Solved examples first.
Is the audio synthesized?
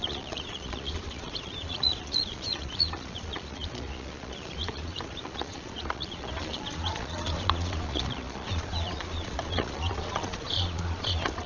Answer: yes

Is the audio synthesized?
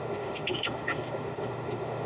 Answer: yes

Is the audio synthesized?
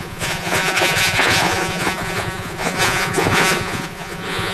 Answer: yes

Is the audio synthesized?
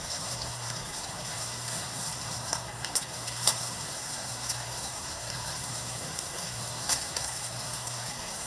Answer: yes